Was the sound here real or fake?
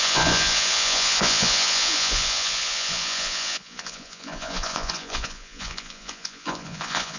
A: fake